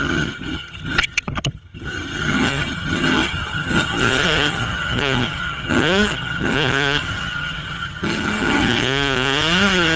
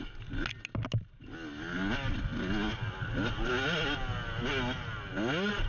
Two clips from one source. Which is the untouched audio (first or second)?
second